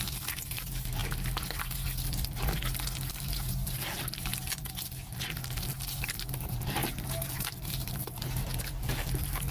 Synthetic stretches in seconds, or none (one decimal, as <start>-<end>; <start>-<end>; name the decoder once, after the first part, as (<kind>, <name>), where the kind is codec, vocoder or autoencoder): 0.0-1.0 (vocoder, BigVGAN v2); 3.1-4.3; 5.2-9.5

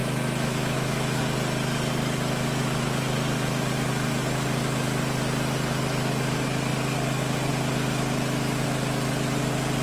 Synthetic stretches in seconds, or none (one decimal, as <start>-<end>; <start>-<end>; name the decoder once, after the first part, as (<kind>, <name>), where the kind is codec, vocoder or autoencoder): 0.0-1.2 (autoencoder, DAC-VAE)

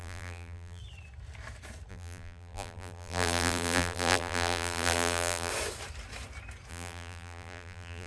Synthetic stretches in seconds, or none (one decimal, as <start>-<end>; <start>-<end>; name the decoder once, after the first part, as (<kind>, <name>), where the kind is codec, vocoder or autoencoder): 0.0-0.8 (vocoder, BigVGAN v2); 1.9-5.5; 6.7-8.1

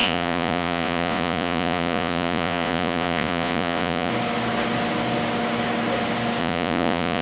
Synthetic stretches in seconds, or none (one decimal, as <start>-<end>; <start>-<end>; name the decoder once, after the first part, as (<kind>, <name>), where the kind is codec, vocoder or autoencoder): 0.0-4.1 (vocoder, Vocos); 6.4-7.2

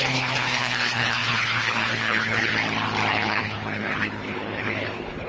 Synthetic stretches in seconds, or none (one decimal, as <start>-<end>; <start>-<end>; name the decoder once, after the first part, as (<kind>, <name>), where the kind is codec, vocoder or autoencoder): 0.0-2.5 (codec, HILCodec); 3.1-5.3